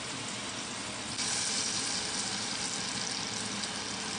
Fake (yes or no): no